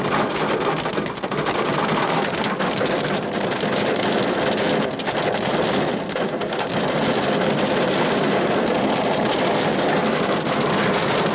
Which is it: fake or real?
real